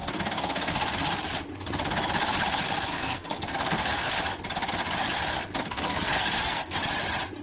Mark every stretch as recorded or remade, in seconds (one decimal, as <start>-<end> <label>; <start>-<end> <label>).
0.0-0.7 remade; 0.7-2.9 recorded; 2.9-4.1 remade; 4.1-5.6 recorded; 5.6-6.8 remade; 6.8-7.4 recorded